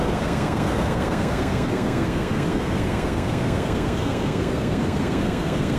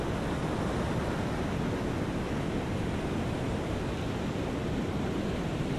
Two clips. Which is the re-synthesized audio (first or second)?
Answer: first